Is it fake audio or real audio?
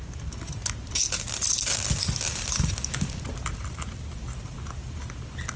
real